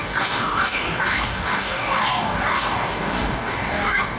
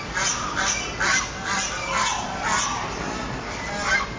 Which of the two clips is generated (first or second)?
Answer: first